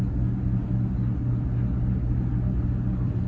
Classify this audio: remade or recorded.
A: recorded